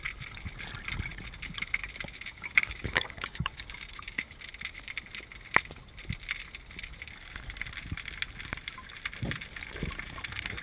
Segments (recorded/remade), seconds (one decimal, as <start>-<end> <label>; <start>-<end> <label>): 0.0-2.3 recorded; 2.3-4.4 remade; 4.4-10.6 recorded